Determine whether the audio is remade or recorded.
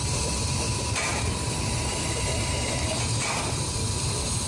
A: remade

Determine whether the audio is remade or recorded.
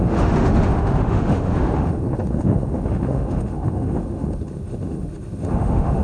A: remade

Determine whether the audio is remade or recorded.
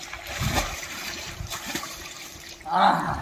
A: remade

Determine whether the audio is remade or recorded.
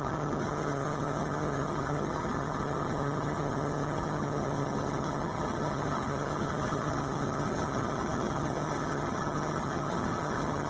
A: remade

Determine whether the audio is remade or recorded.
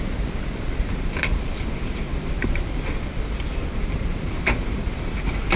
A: recorded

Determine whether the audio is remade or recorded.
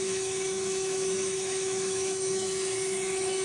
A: remade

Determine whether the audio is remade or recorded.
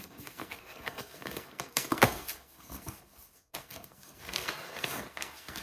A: remade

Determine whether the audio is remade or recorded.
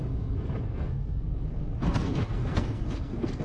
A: remade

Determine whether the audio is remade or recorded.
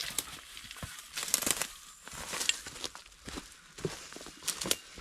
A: recorded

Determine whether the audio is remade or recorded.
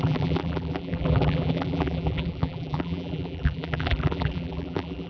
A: remade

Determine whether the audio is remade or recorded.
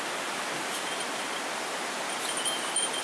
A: recorded